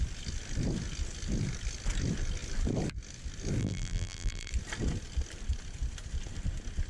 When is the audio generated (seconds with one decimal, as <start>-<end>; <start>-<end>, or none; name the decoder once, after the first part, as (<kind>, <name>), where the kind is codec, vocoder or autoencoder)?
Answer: 3.6-4.5 (vocoder, BigVGAN v2)

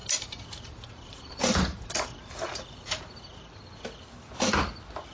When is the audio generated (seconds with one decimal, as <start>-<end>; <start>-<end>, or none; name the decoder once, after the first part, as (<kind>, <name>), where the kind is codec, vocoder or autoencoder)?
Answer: 0.0-3.1 (vocoder, BigVGAN v2)

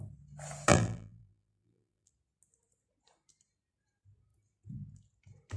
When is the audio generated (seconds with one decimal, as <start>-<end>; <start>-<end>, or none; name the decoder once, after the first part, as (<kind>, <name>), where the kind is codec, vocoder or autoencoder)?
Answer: 0.7-2.1 (vocoder, BigVGAN v2)

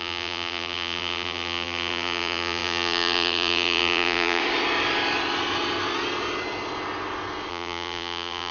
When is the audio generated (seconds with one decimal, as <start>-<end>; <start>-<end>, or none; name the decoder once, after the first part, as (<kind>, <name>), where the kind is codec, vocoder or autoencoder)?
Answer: 0.0-4.4 (vocoder, BigVGAN v2); 7.5-8.5

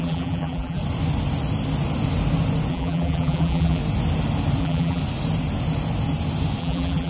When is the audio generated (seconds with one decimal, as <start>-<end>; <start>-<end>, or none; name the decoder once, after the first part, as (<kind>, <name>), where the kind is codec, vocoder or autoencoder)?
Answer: 0.0-0.8 (vocoder, BigVGAN v2); 2.7-3.8; 4.6-5.0; 6.6-7.1

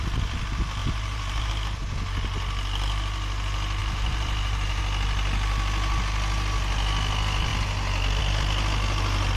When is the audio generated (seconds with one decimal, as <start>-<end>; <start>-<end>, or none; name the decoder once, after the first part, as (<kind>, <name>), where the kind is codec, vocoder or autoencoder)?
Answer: 0.8-1.5 (vocoder, BigVGAN v2); 3.8-4.8

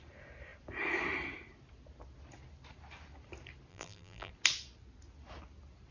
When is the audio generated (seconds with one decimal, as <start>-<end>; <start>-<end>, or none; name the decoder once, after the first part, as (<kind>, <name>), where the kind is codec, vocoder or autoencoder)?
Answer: 3.7-4.3 (vocoder, BigVGAN v2)

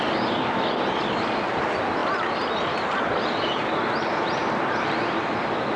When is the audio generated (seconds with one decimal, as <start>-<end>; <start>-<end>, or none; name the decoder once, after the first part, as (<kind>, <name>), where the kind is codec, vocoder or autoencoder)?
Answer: none